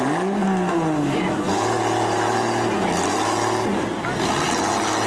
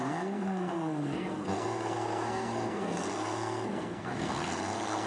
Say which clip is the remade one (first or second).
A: second